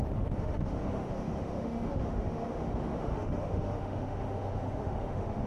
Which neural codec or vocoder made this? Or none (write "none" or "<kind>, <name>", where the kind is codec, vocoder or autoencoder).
autoencoder, DAC-VAE